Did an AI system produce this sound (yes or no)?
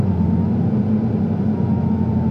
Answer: no